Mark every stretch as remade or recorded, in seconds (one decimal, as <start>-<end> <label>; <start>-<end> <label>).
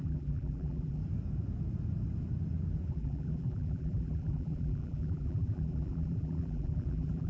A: 0.0-1.0 remade; 1.0-2.9 recorded; 2.9-7.3 remade